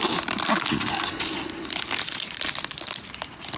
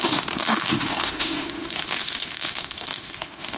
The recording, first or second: first